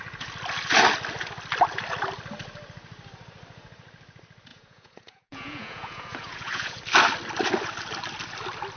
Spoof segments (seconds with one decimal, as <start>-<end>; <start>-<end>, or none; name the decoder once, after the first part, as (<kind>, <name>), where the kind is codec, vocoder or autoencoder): 4.5-6.8 (vocoder, Vocos)